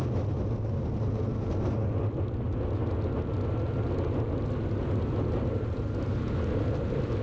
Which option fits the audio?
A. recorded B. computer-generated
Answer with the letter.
A